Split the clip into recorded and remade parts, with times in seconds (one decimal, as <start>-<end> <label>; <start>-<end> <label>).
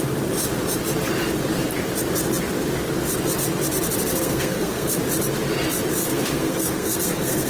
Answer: 0.0-4.1 recorded; 4.1-5.0 remade; 5.0-6.0 recorded; 6.0-7.5 remade